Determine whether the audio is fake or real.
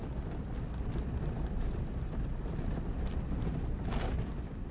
real